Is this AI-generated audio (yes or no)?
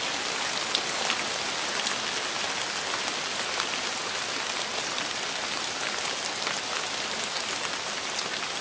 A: no